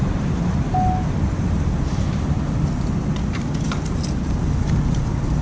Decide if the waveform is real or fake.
real